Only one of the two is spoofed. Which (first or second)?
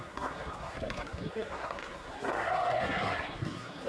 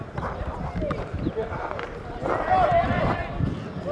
first